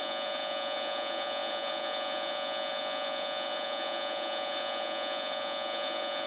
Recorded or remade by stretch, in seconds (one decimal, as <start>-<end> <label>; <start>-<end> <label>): 0.0-6.3 remade